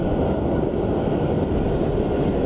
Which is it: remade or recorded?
recorded